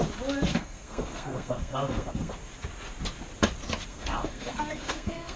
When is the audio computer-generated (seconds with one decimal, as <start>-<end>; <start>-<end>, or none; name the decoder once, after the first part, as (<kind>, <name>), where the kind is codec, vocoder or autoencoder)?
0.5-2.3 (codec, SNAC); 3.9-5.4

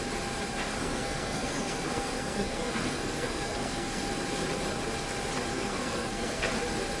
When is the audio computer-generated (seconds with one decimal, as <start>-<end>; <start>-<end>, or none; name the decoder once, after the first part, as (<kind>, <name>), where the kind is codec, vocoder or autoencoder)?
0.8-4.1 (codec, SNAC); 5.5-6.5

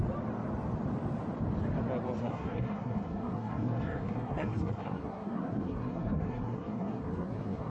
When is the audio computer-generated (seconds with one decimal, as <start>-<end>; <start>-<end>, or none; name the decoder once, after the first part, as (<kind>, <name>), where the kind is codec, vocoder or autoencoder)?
2.2-7.7 (codec, SNAC)

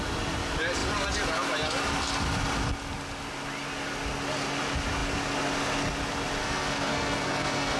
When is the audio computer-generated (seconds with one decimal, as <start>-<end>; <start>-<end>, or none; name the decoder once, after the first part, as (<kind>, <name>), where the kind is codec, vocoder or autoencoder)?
6.4-7.8 (codec, SNAC)

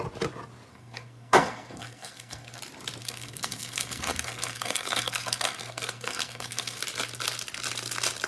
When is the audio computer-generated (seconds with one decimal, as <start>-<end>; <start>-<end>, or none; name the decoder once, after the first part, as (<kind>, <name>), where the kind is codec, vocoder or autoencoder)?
0.7-2.6 (codec, SNAC); 3.0-6.8